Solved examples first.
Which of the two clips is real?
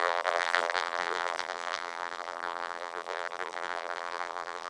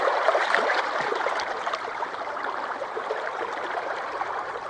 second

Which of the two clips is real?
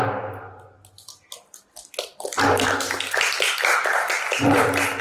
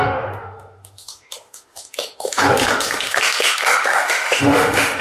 first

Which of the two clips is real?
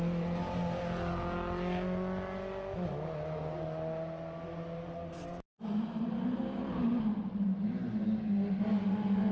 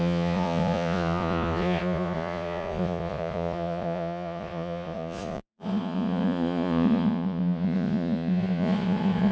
first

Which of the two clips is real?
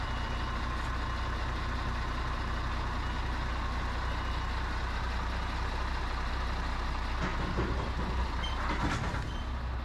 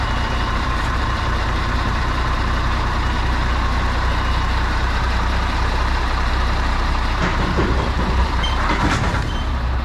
first